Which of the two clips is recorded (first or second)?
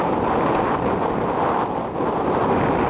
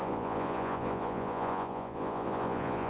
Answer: first